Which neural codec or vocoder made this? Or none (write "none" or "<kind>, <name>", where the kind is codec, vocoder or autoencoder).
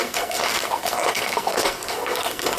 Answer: codec, SNAC